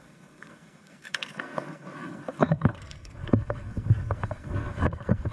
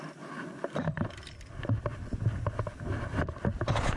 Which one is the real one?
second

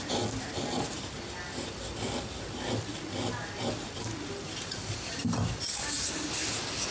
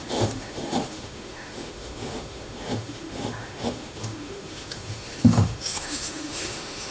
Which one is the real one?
first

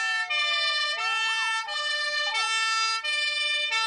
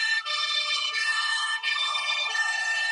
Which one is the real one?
first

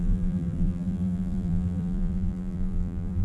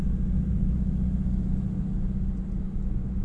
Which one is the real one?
second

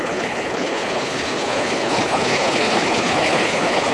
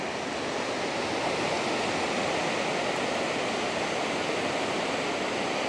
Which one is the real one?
second